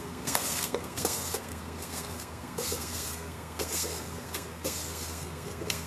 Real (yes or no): no